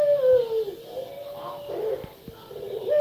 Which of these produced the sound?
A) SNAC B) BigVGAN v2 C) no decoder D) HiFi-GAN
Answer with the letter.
C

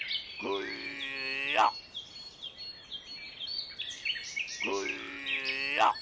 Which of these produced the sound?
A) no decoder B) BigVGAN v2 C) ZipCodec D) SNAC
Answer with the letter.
A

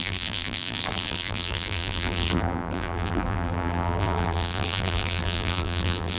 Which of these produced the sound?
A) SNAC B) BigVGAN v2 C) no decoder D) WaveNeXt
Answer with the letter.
B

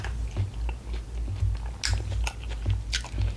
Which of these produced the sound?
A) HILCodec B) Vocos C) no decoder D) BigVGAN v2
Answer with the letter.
C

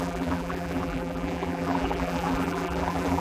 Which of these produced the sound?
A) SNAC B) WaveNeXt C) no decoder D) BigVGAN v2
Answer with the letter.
D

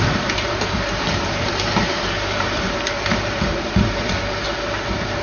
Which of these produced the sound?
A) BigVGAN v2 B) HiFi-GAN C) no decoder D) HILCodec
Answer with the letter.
A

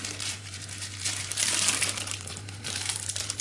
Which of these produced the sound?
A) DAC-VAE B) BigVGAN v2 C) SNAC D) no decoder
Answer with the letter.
B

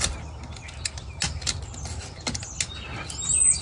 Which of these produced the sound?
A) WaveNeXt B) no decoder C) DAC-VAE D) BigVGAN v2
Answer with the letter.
B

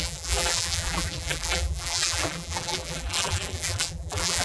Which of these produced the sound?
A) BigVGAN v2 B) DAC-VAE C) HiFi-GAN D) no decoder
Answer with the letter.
A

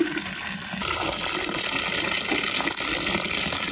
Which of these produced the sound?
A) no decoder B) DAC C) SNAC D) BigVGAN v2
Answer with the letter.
A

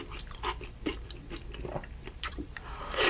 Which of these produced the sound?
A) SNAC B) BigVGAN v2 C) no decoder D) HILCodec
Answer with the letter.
C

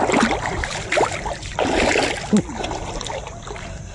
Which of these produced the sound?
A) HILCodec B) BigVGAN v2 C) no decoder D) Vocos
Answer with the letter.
C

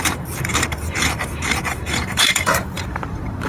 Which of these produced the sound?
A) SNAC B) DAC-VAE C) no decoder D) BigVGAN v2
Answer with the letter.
D